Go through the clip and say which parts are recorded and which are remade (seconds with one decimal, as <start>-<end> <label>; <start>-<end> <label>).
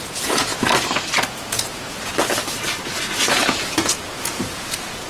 0.0-0.5 remade; 0.5-1.2 recorded; 1.2-2.1 remade; 2.1-3.3 recorded; 3.3-5.1 remade